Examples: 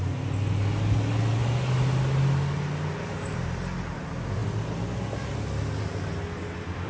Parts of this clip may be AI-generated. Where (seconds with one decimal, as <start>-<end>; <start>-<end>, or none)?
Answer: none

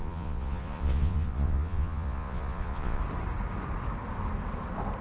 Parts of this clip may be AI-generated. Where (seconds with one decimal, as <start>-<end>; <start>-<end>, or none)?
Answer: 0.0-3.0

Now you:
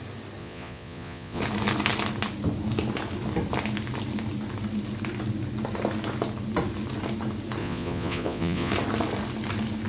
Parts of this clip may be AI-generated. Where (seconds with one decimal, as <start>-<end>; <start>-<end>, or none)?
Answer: 0.4-1.4; 7.6-8.7